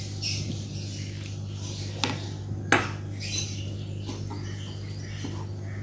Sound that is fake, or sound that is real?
real